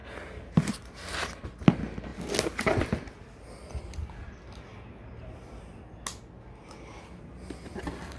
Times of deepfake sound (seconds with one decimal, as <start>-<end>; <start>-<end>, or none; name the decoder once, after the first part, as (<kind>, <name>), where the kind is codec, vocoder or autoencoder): none